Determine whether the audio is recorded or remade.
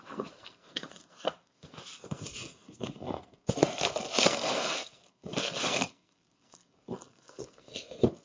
remade